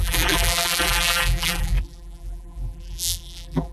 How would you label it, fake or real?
fake